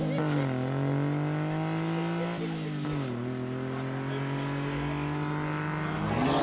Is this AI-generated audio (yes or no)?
no